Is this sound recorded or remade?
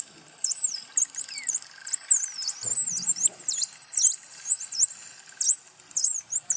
recorded